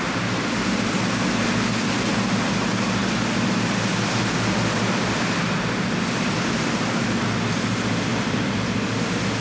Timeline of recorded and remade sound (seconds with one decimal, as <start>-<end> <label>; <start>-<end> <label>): 0.0-3.0 recorded; 3.0-6.6 remade; 6.6-8.1 recorded; 8.1-9.0 remade; 9.0-9.4 recorded